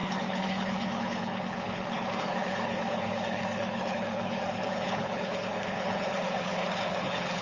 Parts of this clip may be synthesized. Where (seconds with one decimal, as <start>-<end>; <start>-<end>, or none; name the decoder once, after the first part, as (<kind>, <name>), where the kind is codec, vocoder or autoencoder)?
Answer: 0.0-7.4 (codec, HILCodec)